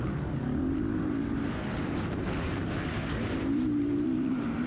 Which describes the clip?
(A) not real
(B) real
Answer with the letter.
A